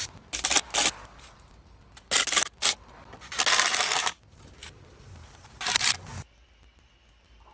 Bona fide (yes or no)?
yes